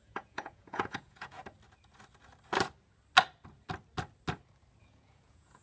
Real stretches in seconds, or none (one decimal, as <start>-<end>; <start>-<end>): 1.4-4.8